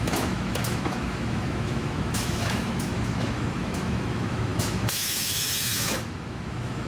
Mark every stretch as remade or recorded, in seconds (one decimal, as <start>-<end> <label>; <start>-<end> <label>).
0.0-6.9 remade